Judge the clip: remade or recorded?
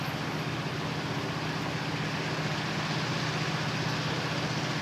recorded